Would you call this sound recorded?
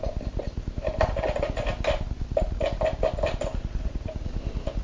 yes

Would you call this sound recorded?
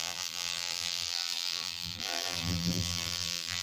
no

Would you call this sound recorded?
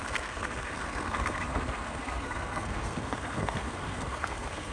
no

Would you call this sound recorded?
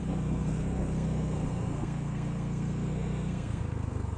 no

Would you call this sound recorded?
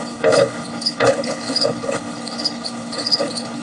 no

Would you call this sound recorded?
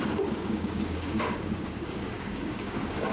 no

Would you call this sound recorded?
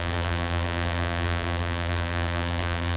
no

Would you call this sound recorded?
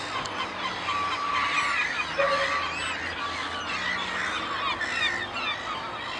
yes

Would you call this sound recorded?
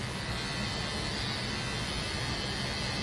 yes